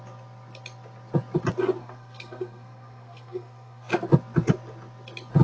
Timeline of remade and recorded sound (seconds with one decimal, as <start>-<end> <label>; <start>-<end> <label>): 0.0-1.8 recorded; 1.8-3.9 remade; 3.9-5.4 recorded

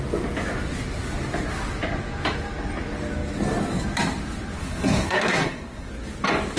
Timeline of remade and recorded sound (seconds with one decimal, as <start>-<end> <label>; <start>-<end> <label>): 0.0-4.6 recorded; 4.6-5.9 remade; 5.9-6.6 recorded

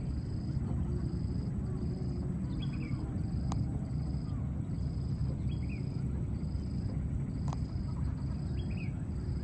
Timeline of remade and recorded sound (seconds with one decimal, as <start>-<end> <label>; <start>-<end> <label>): 0.0-9.4 recorded

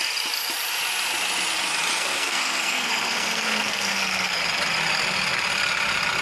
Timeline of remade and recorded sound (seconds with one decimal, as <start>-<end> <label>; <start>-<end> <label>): 0.0-1.9 recorded; 1.9-4.4 remade; 4.4-6.2 recorded

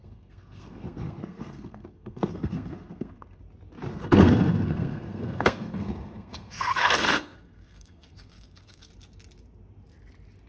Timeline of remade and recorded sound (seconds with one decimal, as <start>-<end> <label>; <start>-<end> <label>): 0.0-3.4 remade; 3.4-3.9 recorded; 3.9-8.9 remade; 8.9-10.5 recorded

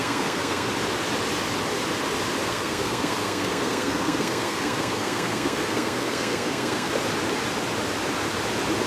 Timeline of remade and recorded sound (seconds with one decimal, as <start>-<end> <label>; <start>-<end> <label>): 0.0-0.7 remade; 0.7-2.5 recorded; 2.5-6.9 remade; 6.9-8.9 recorded

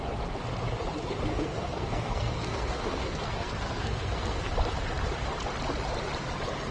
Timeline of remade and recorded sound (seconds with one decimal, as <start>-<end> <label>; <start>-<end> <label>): 0.0-1.3 recorded; 1.3-4.5 remade; 4.5-6.7 recorded